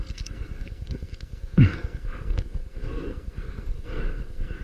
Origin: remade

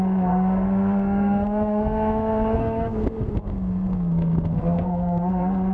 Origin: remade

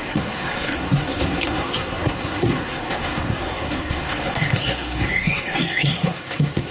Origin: remade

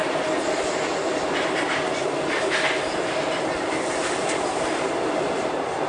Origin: recorded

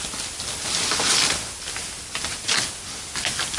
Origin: recorded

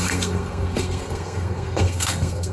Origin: remade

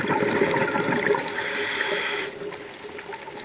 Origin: recorded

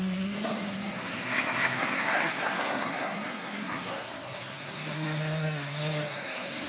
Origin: remade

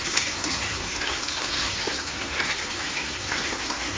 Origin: remade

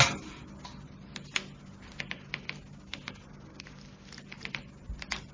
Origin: recorded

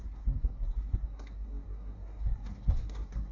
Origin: remade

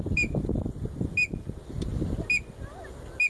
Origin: recorded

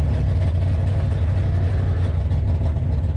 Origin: recorded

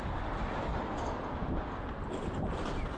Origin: recorded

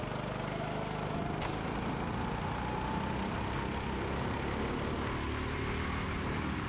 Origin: recorded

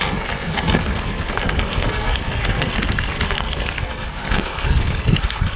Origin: remade